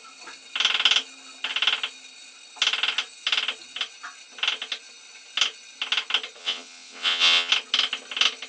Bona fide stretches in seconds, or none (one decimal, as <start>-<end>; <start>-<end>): 0.0-6.4; 7.5-8.5

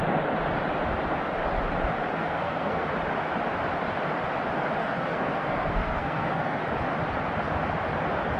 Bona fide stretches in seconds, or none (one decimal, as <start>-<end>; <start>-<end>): 0.0-2.2; 2.9-4.8; 6.6-8.4